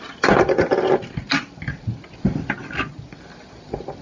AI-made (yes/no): no